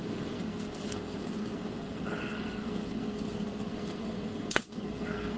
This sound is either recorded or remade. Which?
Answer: remade